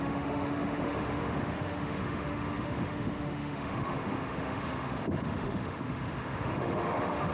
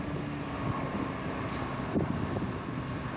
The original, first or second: second